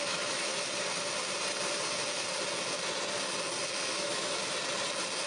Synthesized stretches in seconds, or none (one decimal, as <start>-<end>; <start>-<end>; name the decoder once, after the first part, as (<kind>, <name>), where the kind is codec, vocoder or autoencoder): 0.0-0.5 (autoencoder, DAC-VAE); 3.7-4.4